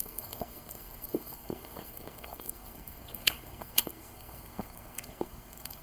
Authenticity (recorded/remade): remade